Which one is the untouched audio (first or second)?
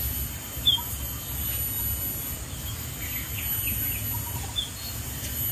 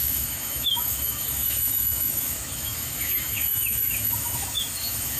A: first